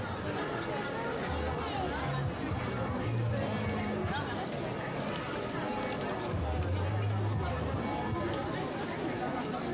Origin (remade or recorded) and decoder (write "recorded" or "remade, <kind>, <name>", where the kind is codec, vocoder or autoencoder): recorded